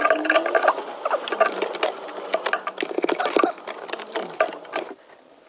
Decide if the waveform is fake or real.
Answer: real